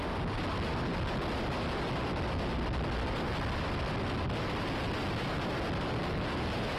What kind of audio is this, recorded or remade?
recorded